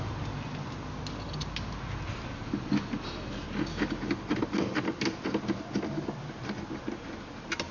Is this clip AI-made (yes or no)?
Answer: no